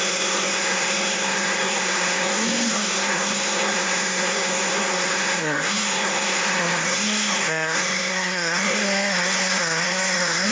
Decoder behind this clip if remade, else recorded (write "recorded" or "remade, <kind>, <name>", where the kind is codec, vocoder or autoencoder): remade, codec, SNAC